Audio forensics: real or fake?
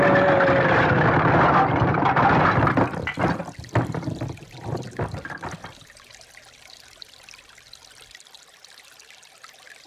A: real